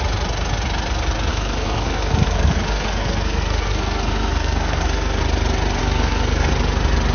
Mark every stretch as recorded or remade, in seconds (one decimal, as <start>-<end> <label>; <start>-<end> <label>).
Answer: 0.0-1.3 recorded; 1.3-5.2 remade; 5.2-5.8 recorded; 5.8-6.5 remade; 6.5-7.1 recorded